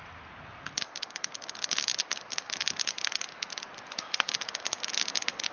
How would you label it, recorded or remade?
recorded